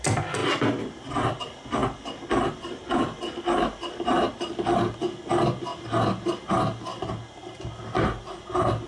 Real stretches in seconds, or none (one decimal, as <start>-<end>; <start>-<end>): 0.0-8.9